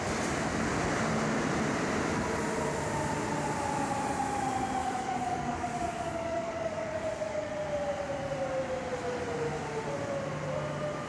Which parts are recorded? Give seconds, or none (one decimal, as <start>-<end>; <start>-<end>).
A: 0.0-4.8; 7.5-11.1